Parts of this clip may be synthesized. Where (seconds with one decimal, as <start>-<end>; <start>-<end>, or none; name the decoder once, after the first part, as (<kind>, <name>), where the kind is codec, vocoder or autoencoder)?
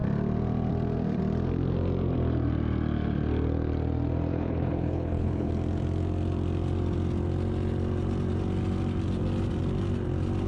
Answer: 4.3-5.5 (codec, HILCodec)